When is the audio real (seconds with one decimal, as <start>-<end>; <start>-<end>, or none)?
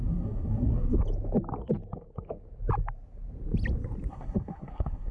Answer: 1.0-4.1